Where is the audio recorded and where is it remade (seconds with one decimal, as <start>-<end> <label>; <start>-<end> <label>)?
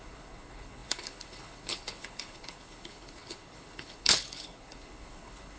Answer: 0.0-5.6 remade